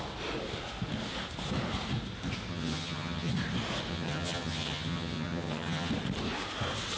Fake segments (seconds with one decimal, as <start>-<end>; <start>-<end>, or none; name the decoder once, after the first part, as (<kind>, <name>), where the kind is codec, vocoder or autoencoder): 2.5-3.3 (vocoder, HiFi-GAN); 3.9-5.9